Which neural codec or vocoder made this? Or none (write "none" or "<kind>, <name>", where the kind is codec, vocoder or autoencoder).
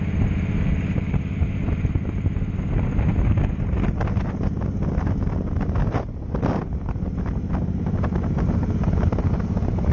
none